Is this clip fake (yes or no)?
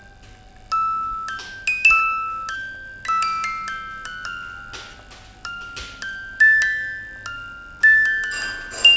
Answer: no